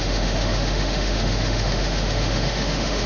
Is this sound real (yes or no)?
no